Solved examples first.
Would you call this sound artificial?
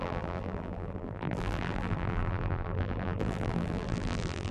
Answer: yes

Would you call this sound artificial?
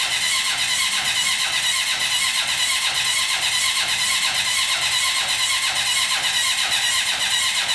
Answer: no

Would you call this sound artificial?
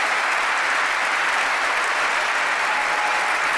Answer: no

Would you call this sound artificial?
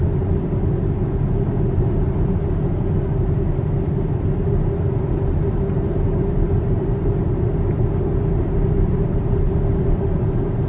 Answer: no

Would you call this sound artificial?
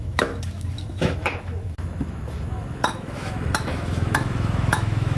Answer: yes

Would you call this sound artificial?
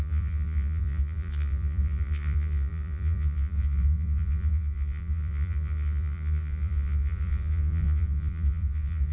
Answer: yes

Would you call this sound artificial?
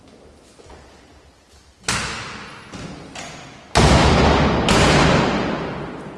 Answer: no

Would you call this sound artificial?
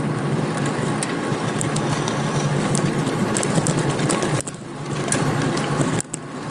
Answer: no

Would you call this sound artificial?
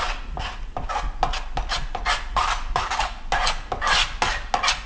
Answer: no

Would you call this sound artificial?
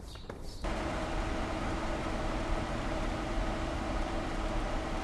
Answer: yes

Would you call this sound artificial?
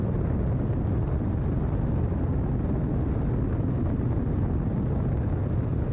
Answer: no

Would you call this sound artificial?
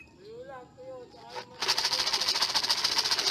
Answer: no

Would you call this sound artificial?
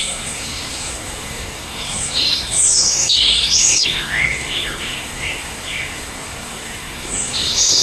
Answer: yes